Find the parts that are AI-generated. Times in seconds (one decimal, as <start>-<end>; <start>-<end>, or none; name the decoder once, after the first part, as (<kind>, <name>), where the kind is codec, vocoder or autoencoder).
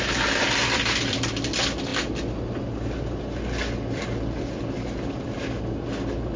none